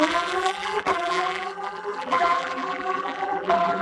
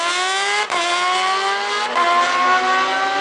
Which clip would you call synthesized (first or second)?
first